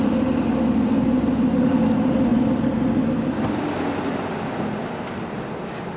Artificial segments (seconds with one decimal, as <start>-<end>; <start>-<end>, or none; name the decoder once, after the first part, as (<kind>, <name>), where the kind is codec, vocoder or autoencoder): none